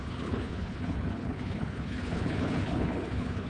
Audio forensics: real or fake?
fake